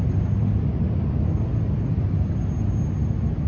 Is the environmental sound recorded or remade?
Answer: recorded